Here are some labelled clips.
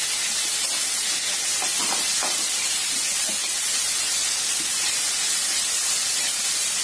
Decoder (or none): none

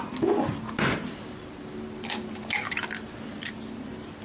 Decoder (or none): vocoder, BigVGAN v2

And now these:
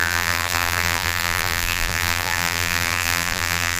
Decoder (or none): vocoder, BigVGAN v2